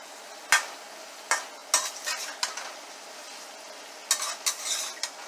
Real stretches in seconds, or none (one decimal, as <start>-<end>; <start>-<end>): 0.0-5.3